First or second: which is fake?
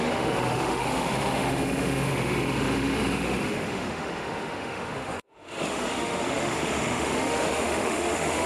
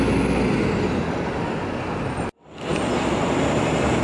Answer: first